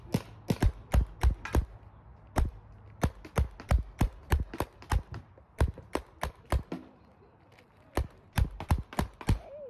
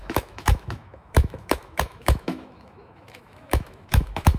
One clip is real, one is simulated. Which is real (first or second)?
first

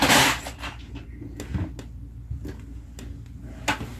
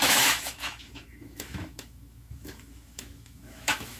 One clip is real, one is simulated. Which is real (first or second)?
first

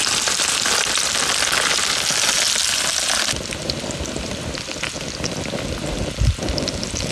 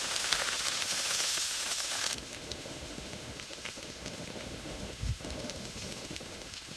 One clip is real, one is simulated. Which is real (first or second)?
first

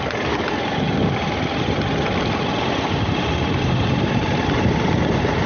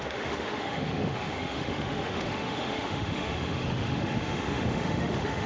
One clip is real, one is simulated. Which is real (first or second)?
first